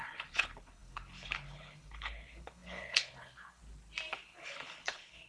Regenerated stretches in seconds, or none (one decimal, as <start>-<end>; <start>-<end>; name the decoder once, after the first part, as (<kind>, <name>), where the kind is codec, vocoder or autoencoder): 0.0-3.6 (codec, HILCodec); 4.1-5.3